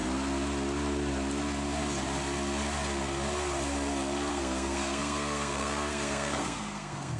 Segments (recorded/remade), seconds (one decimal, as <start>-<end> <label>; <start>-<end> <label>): 0.0-4.3 recorded; 4.3-7.2 remade